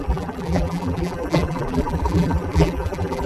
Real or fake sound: fake